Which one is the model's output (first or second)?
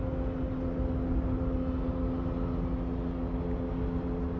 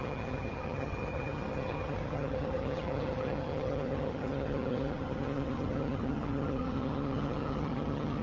second